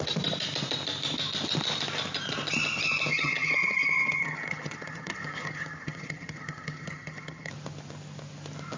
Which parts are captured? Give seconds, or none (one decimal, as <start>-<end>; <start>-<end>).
0.0-3.1; 7.5-8.8